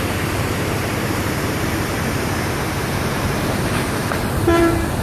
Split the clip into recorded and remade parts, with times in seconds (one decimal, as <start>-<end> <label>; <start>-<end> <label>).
0.0-4.0 remade; 4.0-5.0 recorded